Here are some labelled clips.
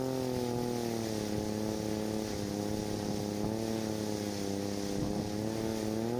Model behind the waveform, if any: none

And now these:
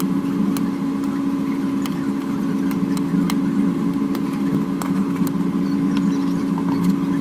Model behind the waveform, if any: none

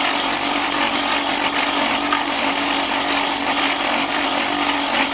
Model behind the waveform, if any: none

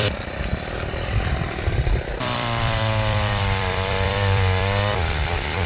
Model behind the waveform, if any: vocoder, BigVGAN v2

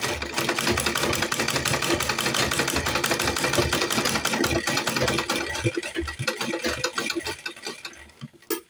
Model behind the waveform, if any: none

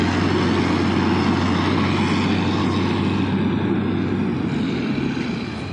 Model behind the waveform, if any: none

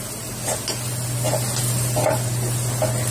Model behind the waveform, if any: none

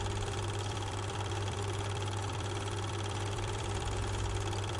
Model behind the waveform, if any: vocoder, BigVGAN v2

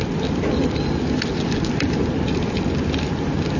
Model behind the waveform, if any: none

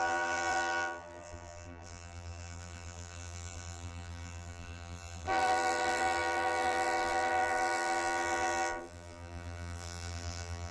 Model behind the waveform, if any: vocoder, BigVGAN v2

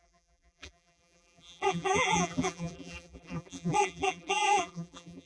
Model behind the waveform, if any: vocoder, BigVGAN v2